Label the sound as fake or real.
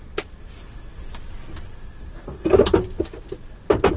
real